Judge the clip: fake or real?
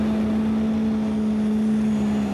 real